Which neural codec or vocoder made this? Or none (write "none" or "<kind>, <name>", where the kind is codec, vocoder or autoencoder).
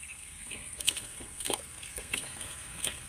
codec, SNAC